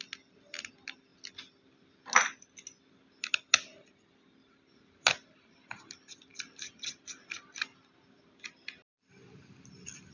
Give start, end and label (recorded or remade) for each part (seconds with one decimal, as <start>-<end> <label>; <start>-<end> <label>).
0.0-10.1 recorded

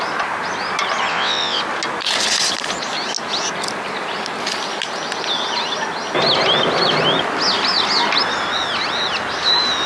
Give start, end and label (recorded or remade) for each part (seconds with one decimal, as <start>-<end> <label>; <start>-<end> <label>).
0.0-1.1 recorded; 1.1-1.6 remade; 1.6-9.9 recorded

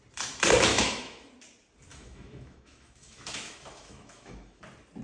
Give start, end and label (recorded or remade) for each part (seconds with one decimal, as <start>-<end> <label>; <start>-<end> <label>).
0.0-0.7 recorded; 0.7-1.3 remade; 1.3-1.9 recorded; 1.9-4.6 remade; 4.6-5.0 recorded

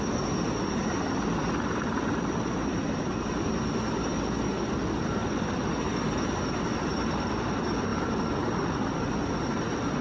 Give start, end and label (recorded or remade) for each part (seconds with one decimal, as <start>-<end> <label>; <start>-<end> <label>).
0.0-4.1 recorded; 4.1-7.3 remade; 7.3-10.0 recorded